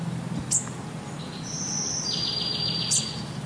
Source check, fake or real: real